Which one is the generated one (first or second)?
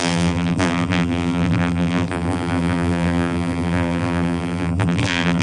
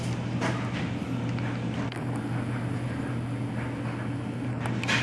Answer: first